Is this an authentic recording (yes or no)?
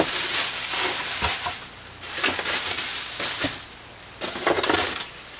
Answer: yes